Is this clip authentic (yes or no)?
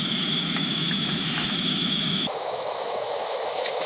no